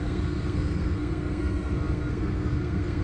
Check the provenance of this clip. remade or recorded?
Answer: remade